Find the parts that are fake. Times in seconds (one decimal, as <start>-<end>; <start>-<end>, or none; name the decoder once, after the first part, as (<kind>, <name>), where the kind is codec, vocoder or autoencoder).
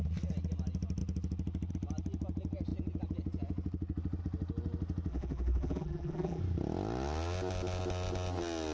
5.1-6.4 (vocoder, BigVGAN v2)